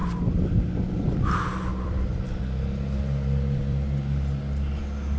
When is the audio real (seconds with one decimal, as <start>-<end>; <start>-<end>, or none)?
0.0-1.7; 4.8-5.2